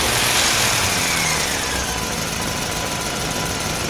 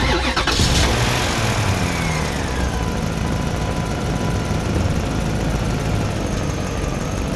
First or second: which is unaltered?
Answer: second